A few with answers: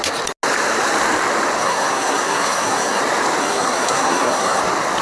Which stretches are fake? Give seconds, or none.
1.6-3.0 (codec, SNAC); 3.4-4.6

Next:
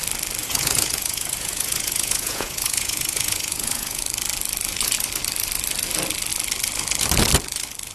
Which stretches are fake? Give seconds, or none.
0.4-4.0 (vocoder, Vocos)

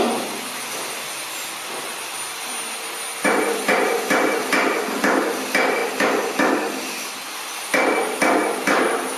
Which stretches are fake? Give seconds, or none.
8.4-9.2 (vocoder, BigVGAN v2)

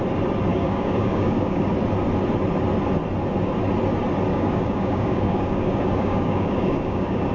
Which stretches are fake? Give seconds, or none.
0.5-1.7 (codec, DAC); 4.3-7.3

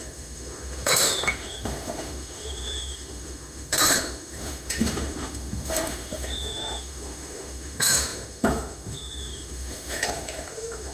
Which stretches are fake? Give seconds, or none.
0.0-10.9 (autoencoder, DAC-VAE)